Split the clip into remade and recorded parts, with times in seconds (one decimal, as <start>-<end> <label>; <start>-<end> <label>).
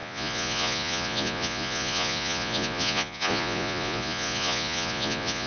0.0-5.5 remade